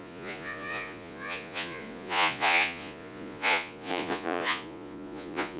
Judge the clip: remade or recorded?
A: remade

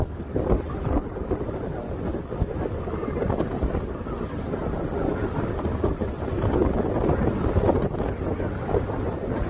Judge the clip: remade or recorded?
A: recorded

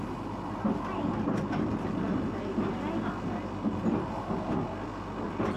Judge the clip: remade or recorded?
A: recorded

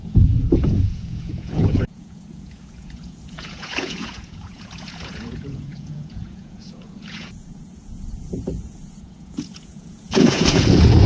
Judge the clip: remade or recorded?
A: remade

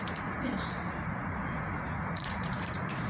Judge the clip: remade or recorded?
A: remade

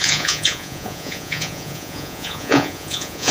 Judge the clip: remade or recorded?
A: remade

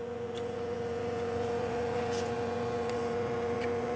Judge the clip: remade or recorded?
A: remade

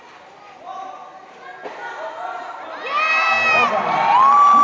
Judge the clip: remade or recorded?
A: recorded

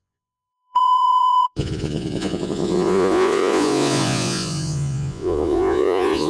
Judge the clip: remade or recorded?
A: remade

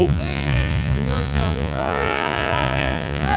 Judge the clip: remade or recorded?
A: remade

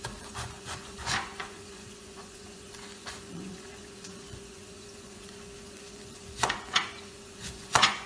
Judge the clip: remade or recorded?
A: remade